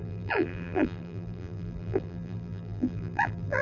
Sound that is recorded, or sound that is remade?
remade